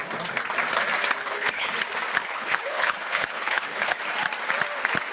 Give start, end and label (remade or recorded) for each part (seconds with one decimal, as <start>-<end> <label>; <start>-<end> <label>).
0.0-1.2 recorded; 1.2-1.7 remade; 1.7-2.2 recorded; 2.2-4.0 remade; 4.0-5.1 recorded